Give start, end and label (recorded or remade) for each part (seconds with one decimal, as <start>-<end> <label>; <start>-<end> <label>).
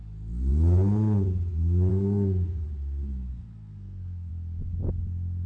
0.0-1.9 recorded; 1.9-2.7 remade; 2.7-3.3 recorded; 3.3-4.3 remade; 4.3-5.5 recorded